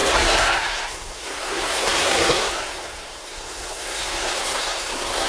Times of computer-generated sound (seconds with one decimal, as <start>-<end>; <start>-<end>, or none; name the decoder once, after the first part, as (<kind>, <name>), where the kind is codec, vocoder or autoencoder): 0.0-5.3 (codec, SNAC)

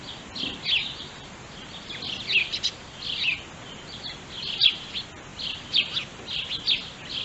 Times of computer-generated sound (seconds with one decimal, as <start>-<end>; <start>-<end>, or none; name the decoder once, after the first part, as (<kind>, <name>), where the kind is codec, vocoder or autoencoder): none

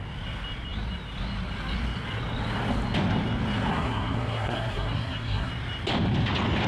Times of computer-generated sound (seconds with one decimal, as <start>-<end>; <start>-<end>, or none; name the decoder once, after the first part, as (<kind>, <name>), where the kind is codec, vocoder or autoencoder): 3.7-5.5 (codec, SNAC)

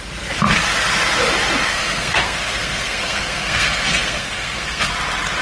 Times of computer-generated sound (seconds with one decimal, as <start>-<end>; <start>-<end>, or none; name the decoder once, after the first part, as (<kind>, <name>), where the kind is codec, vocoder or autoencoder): 1.7-4.9 (codec, SNAC)

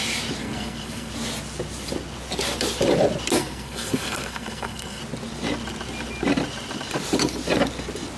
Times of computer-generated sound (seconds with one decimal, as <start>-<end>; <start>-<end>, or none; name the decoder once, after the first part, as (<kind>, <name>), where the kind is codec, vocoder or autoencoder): 0.4-1.1 (codec, SNAC); 3.4-5.0

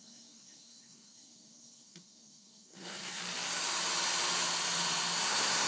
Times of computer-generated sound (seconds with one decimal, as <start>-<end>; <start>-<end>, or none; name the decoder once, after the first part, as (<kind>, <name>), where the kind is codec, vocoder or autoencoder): 0.0-3.2 (codec, SNAC); 5.2-5.7

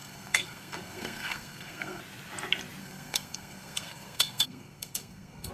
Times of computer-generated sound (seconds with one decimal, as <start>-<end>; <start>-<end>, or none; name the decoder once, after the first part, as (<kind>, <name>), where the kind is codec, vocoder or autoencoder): 0.0-2.0 (codec, SNAC); 2.8-5.5